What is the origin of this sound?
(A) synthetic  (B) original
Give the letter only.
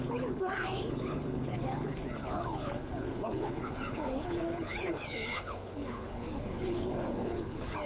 A